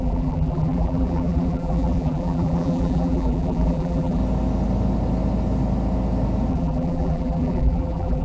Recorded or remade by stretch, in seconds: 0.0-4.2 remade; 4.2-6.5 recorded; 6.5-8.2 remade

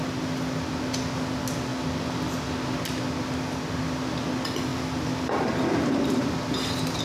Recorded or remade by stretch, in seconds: 0.0-1.7 recorded; 1.7-2.8 remade; 2.8-7.0 recorded

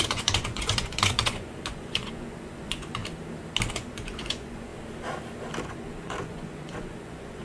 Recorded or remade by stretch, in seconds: 0.0-3.0 remade; 3.0-3.7 recorded; 3.7-4.7 remade; 4.7-5.6 recorded; 5.6-7.4 remade

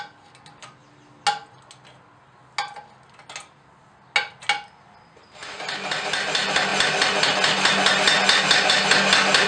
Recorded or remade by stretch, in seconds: 0.0-9.5 recorded

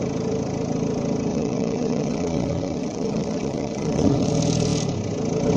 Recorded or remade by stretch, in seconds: 0.0-1.3 recorded; 1.3-4.3 remade; 4.3-5.6 recorded